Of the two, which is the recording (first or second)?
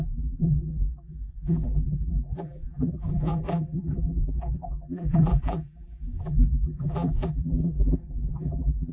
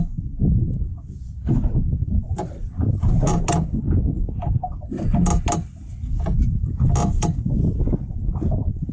second